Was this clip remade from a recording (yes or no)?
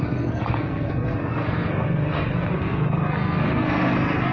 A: yes